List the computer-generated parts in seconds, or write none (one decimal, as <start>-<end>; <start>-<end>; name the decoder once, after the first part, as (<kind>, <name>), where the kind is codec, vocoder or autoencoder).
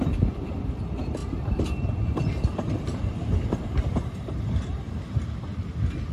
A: 1.2-4.9 (vocoder, BigVGAN v2)